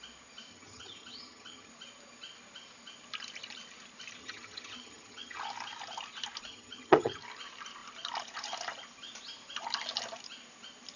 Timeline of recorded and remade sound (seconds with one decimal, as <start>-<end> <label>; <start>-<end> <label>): 0.0-0.5 recorded; 0.5-1.7 remade; 1.7-4.2 recorded; 4.2-5.4 remade; 5.4-6.5 recorded; 6.5-7.2 remade; 7.2-11.0 recorded